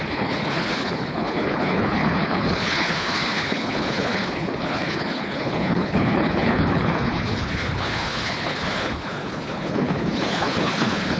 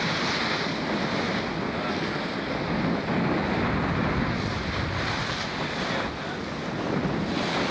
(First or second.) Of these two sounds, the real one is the second